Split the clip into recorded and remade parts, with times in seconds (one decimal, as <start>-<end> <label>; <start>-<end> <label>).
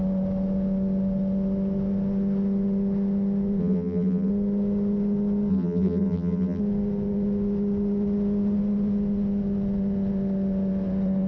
0.0-3.6 recorded; 3.6-4.3 remade; 4.3-5.5 recorded; 5.5-6.6 remade; 6.6-11.3 recorded